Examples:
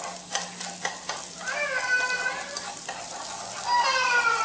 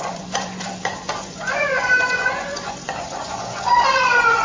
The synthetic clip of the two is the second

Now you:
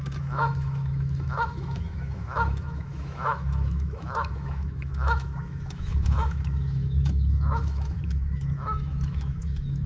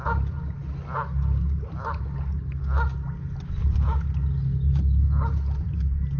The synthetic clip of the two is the first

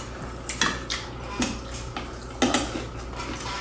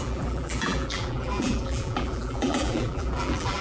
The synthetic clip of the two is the second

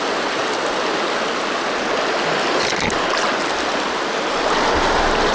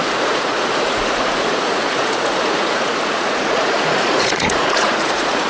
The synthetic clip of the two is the second